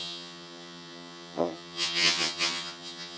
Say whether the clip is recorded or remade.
remade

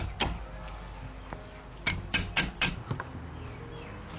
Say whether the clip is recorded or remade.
recorded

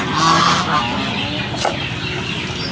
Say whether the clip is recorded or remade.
recorded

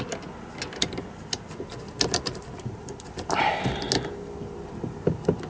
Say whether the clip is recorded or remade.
recorded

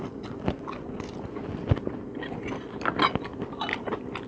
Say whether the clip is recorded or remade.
recorded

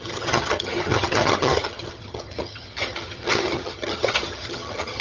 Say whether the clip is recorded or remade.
remade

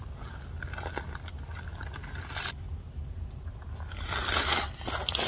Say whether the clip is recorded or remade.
recorded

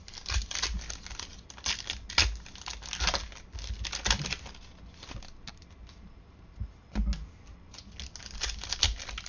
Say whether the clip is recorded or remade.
recorded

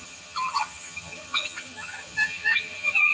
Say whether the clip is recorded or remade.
remade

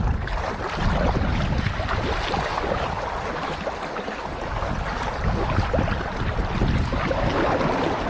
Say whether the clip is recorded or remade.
recorded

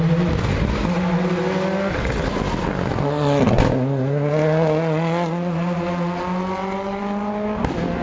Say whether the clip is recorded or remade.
recorded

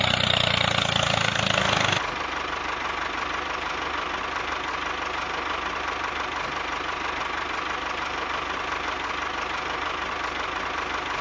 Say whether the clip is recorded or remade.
recorded